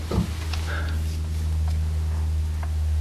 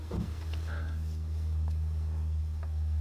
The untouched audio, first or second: first